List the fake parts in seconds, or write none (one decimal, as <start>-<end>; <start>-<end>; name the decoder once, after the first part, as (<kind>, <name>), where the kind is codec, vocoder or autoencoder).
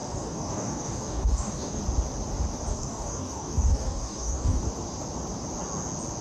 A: 0.0-1.8 (codec, DAC); 2.7-4.7